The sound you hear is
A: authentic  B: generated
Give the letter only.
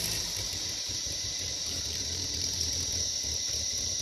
B